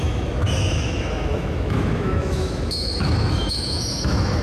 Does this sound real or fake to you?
fake